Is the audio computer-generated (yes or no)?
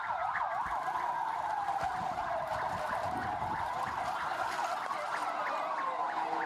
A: no